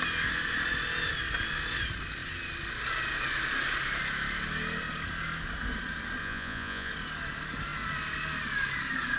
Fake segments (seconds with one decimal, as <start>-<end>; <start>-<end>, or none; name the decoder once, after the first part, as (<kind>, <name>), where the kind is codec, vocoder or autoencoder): 6.2-6.9 (vocoder, Vocos)